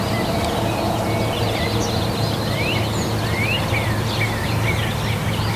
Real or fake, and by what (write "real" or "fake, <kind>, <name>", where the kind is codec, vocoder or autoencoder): real